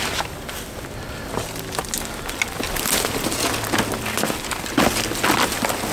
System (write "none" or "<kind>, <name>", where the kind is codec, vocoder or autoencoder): none